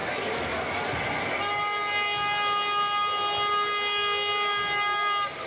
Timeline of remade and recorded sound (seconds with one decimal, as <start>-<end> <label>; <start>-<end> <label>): 0.0-5.5 recorded

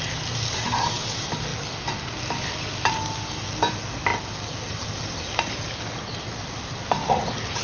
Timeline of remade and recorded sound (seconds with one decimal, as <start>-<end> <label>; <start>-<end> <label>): 0.0-7.6 recorded

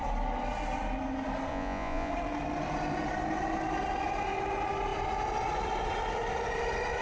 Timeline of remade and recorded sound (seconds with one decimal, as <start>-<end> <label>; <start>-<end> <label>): 0.0-1.5 recorded; 1.5-2.1 remade; 2.1-7.0 recorded

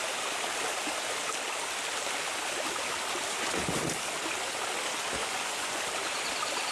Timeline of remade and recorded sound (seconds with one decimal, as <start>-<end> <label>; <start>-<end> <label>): 0.0-5.2 recorded; 5.2-5.8 remade; 5.8-6.7 recorded

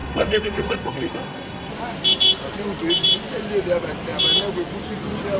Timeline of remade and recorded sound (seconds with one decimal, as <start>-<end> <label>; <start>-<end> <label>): 0.0-1.7 remade; 1.7-5.4 recorded